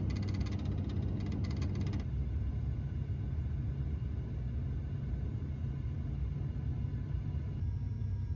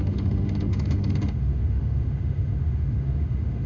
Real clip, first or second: first